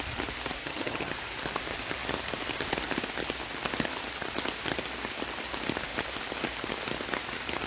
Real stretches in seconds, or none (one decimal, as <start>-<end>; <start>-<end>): 0.0-0.6; 1.1-7.7